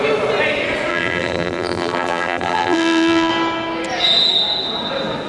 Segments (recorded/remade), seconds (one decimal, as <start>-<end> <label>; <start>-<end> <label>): 0.0-0.9 recorded; 0.9-3.3 remade; 3.3-5.3 recorded